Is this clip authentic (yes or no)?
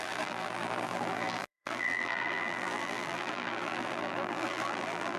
no